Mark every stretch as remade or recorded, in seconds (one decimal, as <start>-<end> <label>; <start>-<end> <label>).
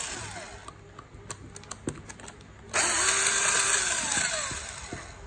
0.0-5.3 recorded